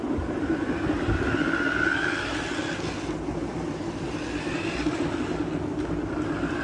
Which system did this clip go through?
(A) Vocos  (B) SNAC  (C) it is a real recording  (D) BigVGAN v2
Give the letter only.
C